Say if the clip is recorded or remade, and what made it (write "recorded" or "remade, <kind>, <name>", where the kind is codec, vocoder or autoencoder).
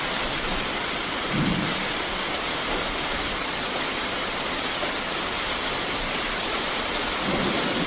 remade, vocoder, BigVGAN v2